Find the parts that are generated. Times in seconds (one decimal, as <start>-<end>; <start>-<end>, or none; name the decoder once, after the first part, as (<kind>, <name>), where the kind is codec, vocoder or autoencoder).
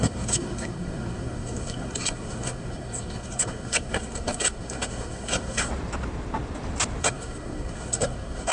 0.0-5.7 (codec, SNAC); 7.0-8.5